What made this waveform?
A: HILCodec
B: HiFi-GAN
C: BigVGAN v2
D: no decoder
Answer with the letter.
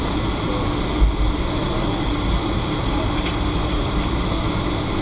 D